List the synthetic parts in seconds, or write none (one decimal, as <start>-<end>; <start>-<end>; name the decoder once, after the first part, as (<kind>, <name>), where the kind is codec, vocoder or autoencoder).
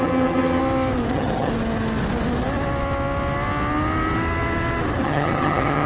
0.0-0.6 (vocoder, HiFi-GAN); 1.1-1.5; 5.0-5.9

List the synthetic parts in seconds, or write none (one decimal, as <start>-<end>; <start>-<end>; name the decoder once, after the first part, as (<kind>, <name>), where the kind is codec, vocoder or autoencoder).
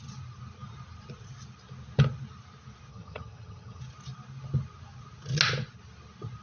2.9-3.8 (vocoder, HiFi-GAN)